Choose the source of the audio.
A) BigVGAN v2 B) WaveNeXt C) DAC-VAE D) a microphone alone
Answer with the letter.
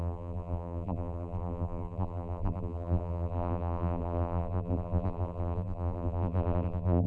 A